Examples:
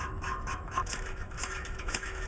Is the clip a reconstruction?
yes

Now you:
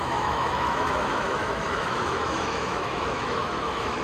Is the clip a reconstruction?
yes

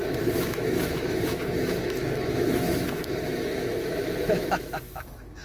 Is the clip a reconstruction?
yes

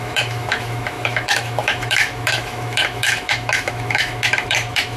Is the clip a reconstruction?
yes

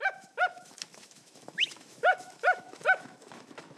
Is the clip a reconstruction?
yes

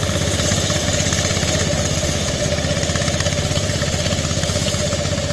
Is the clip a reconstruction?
no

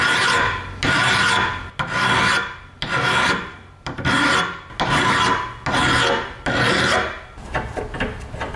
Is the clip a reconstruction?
no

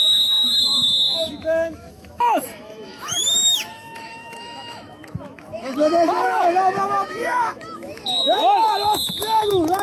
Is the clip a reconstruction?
yes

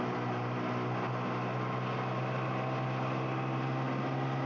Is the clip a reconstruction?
no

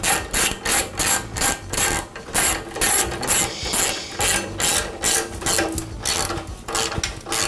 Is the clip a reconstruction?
no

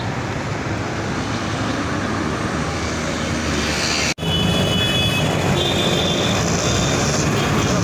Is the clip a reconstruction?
no